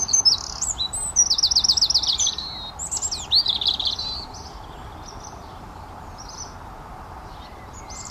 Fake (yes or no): no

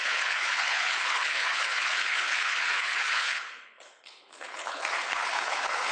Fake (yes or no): yes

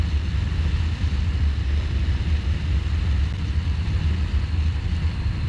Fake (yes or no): no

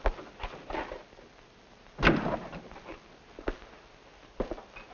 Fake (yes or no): no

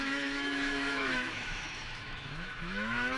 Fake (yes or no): yes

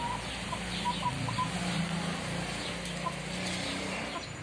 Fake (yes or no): no